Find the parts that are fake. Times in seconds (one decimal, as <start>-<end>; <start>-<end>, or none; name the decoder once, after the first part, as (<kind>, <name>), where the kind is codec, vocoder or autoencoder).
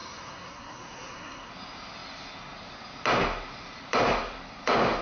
0.0-1.5 (codec, SNAC)